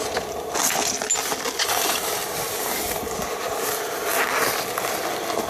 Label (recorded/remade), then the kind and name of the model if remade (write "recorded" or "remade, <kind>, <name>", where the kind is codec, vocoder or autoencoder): recorded